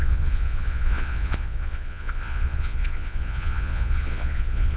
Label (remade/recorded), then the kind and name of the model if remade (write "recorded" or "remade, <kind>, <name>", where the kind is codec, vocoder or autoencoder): remade, vocoder, Vocos